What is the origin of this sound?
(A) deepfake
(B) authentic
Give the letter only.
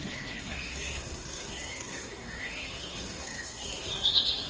A